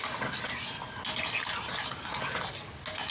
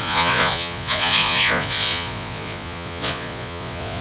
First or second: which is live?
first